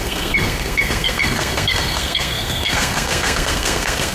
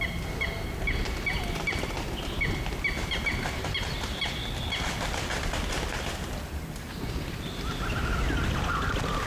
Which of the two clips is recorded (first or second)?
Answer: second